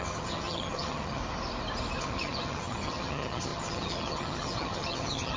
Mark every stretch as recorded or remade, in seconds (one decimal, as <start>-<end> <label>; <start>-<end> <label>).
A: 0.0-1.2 remade; 1.2-2.0 recorded; 2.0-5.4 remade